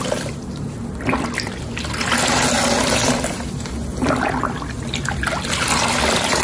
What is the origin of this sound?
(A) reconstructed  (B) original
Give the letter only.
B